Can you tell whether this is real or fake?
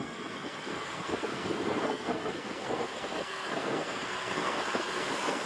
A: fake